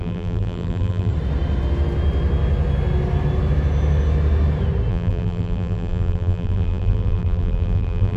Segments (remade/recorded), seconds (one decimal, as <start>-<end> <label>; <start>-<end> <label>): 0.0-1.1 remade; 1.1-4.9 recorded; 4.9-8.2 remade